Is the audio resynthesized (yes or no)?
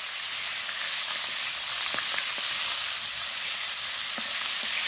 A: no